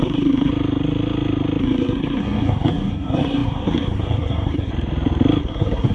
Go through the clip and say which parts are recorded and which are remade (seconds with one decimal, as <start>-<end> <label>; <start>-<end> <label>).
0.0-0.5 remade; 0.5-1.6 recorded; 1.6-4.7 remade; 4.7-5.4 recorded; 5.4-5.9 remade

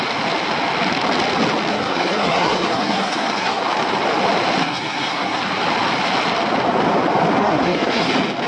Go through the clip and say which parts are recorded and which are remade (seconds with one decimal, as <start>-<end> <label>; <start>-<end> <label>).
0.0-1.7 recorded; 1.7-3.6 remade; 3.6-4.6 recorded; 4.6-5.4 remade; 5.4-7.4 recorded; 7.4-8.1 remade; 8.1-8.5 recorded

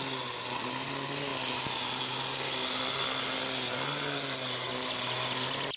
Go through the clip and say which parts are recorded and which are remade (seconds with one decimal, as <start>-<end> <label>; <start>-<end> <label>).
0.0-5.8 recorded

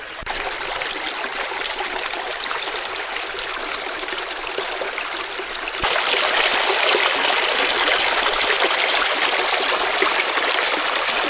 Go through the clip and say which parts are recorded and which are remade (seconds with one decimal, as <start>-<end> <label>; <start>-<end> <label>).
0.0-11.3 recorded

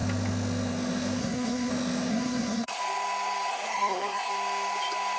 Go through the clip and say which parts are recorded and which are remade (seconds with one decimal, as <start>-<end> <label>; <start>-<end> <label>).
0.0-1.2 recorded; 1.2-1.7 remade; 1.7-2.1 recorded; 2.1-2.8 remade; 2.8-3.5 recorded; 3.5-4.3 remade; 4.3-5.2 recorded

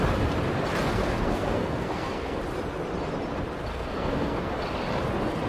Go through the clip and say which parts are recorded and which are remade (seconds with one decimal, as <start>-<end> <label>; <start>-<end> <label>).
0.0-0.9 recorded; 0.9-2.4 remade; 2.4-3.7 recorded; 3.7-4.5 remade; 4.5-5.5 recorded

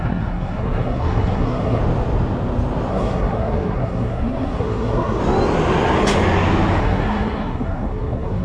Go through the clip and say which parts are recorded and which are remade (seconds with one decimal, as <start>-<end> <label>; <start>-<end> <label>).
0.0-1.8 remade; 1.8-2.9 recorded; 2.9-5.2 remade; 5.2-6.8 recorded; 6.8-8.4 remade

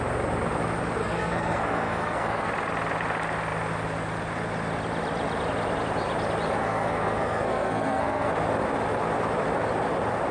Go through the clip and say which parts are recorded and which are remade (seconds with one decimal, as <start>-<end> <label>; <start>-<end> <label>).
0.0-1.0 recorded; 1.0-2.5 remade; 2.5-6.6 recorded; 6.6-8.3 remade; 8.3-10.3 recorded